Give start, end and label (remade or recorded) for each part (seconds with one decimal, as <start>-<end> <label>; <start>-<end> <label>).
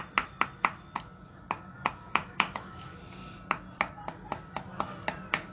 0.0-2.0 recorded; 2.0-2.9 remade; 2.9-5.5 recorded